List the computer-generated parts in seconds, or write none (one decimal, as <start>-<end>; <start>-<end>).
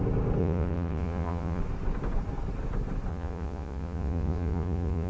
0.4-1.6; 3.1-5.1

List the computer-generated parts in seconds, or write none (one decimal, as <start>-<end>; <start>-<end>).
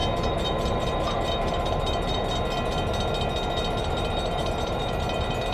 0.0-2.2; 3.8-5.5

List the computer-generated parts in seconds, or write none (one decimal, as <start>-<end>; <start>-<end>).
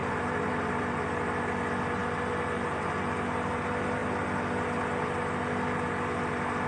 0.0-0.8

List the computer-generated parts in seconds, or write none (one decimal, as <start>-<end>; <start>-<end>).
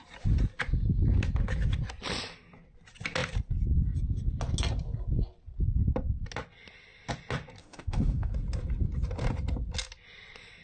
7.6-8.3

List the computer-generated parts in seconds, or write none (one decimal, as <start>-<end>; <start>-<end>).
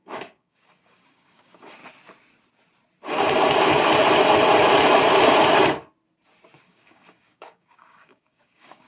0.0-1.8; 6.6-8.9